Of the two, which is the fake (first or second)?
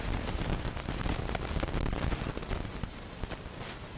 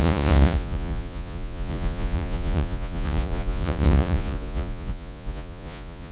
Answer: second